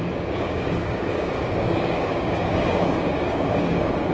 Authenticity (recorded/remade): remade